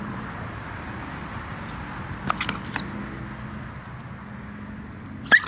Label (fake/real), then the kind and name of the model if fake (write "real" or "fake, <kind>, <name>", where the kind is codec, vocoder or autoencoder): real